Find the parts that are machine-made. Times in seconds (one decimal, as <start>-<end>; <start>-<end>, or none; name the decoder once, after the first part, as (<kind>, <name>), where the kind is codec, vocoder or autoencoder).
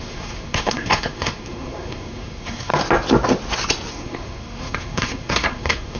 0.0-2.7 (codec, SNAC); 3.9-6.0